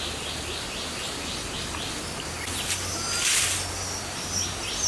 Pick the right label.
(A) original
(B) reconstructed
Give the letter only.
A